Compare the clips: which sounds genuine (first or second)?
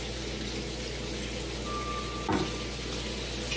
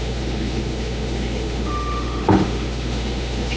first